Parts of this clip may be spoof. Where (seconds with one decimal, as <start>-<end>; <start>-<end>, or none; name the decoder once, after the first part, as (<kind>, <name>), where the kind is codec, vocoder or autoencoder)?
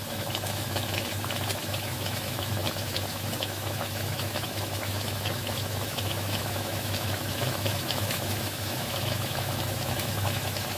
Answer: 0.0-10.8 (autoencoder, DAC-VAE)